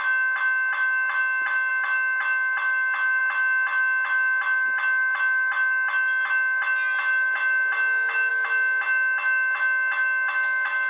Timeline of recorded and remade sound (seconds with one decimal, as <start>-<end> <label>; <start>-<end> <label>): 0.0-10.9 recorded